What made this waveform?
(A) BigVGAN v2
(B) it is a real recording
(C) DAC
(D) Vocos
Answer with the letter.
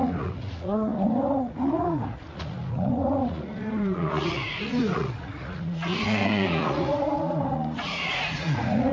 D